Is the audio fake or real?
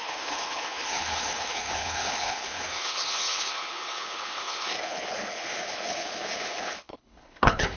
fake